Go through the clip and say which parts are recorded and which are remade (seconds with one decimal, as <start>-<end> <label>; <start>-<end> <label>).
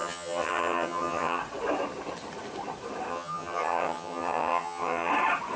0.0-1.4 remade; 1.4-3.1 recorded; 3.1-5.1 remade; 5.1-5.6 recorded